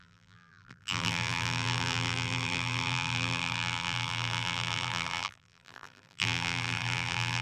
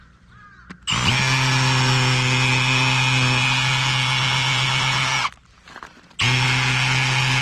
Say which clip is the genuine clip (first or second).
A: second